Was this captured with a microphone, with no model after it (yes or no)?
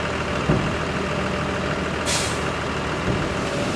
yes